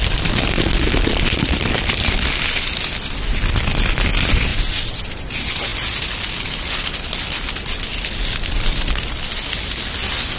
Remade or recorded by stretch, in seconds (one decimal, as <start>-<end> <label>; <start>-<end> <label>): 0.0-10.4 recorded